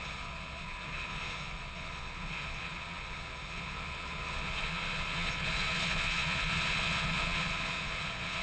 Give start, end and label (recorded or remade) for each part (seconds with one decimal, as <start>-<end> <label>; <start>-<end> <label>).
0.0-8.4 remade